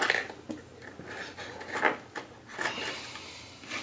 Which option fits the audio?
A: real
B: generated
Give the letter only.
A